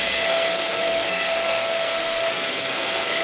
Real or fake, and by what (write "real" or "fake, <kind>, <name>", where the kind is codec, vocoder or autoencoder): fake, codec, SNAC